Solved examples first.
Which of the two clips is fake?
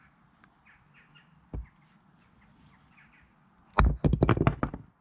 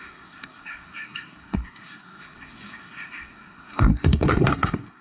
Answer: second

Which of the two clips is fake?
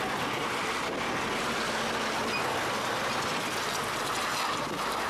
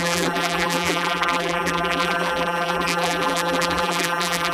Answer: second